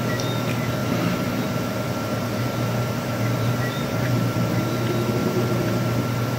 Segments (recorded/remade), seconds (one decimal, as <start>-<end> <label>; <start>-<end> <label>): 0.0-0.8 recorded; 0.8-4.6 remade; 4.6-5.2 recorded; 5.2-6.0 remade; 6.0-6.4 recorded